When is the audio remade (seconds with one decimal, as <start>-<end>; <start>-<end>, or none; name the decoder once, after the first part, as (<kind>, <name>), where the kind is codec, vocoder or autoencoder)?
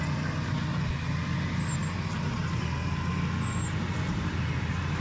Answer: none